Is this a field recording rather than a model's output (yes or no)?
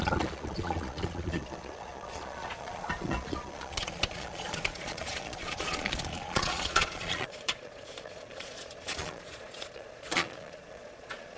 no